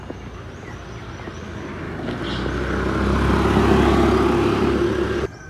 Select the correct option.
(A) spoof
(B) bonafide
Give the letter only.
B